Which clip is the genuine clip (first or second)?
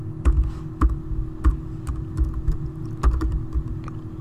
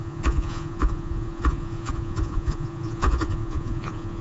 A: first